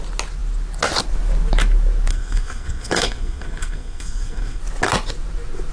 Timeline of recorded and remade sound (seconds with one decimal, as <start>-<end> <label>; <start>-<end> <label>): 0.0-2.1 recorded; 2.1-4.6 remade; 4.6-5.7 recorded